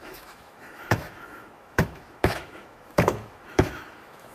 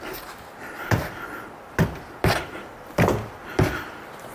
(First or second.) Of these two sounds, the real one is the second